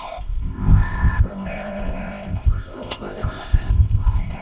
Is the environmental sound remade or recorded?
remade